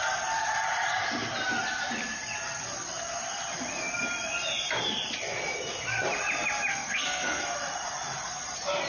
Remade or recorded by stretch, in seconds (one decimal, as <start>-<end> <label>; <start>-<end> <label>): 0.0-6.7 recorded; 6.7-7.4 remade; 7.4-8.9 recorded